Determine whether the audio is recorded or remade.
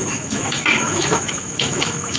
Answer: remade